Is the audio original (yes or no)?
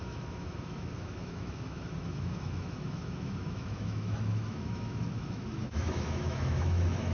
no